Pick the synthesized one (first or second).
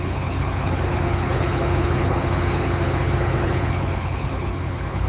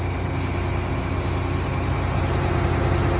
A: first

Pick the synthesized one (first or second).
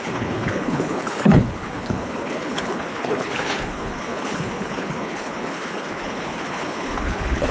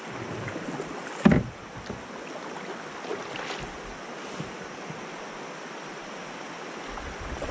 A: first